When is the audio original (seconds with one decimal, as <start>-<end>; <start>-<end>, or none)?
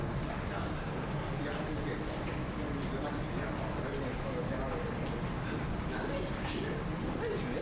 0.0-0.9; 1.4-7.6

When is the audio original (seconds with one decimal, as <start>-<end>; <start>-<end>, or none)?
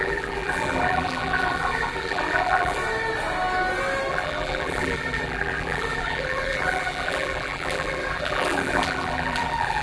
2.8-4.1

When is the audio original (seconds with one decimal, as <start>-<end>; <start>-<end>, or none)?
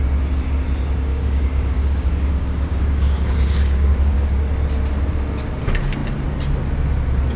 0.0-1.1; 4.4-7.4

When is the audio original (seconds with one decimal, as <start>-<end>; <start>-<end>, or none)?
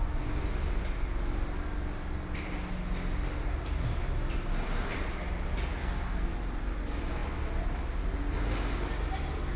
0.0-5.8; 6.3-9.6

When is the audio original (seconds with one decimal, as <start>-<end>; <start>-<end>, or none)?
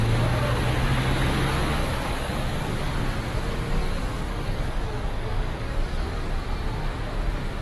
0.0-1.8; 3.0-3.8; 6.3-7.6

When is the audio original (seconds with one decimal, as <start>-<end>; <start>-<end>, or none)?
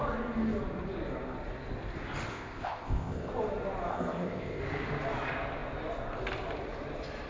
0.0-2.3; 3.3-3.9; 4.6-7.3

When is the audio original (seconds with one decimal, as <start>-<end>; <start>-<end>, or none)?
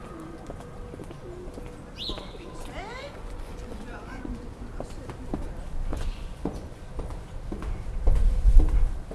0.0-3.0; 4.4-5.9; 6.8-9.1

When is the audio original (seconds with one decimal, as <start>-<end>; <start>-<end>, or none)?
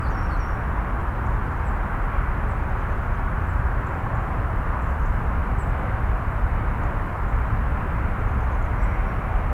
0.0-5.4; 6.8-7.7; 8.6-9.5